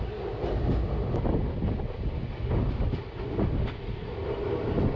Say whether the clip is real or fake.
real